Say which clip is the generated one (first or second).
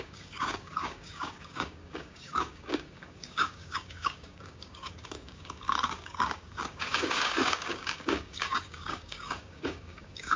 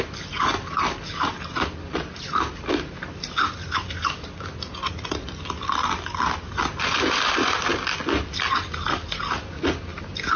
first